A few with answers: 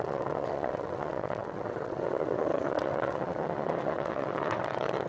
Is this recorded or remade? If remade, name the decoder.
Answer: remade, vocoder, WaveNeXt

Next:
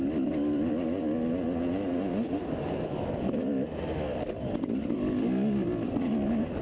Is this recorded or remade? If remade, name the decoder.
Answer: recorded